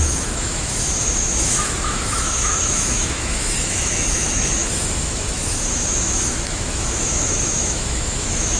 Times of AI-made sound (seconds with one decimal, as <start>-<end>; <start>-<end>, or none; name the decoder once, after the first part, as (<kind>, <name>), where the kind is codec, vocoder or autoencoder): 0.0-8.6 (autoencoder, DAC-VAE)